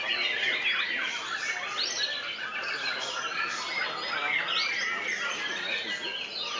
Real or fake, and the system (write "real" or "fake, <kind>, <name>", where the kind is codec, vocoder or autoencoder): real